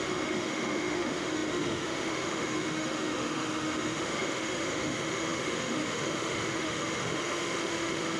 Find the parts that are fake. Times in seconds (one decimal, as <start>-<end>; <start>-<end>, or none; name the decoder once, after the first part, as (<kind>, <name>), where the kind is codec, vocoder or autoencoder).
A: 0.0-8.2 (autoencoder, DAC-VAE)